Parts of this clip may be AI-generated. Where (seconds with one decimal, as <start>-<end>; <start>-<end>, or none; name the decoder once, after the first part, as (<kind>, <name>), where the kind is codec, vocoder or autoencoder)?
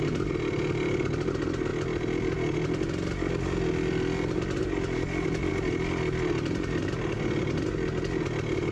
none